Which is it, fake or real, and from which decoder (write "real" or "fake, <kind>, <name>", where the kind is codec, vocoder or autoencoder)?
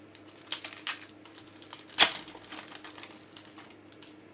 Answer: real